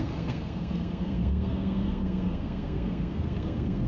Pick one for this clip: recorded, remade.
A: remade